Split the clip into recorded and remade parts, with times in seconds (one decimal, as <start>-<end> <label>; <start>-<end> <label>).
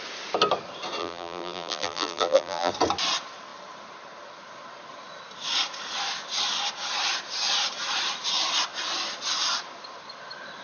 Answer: 0.0-1.0 recorded; 1.0-2.7 remade; 2.7-10.6 recorded